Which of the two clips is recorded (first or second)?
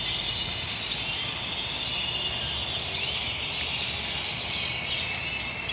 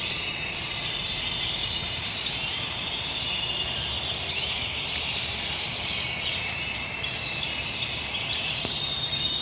first